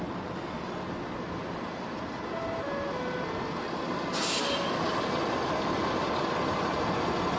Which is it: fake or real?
real